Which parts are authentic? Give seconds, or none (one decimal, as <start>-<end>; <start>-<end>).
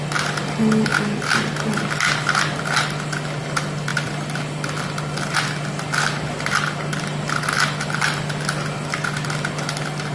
0.0-10.1